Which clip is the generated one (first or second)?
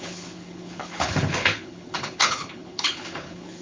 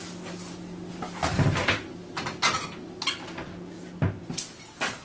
first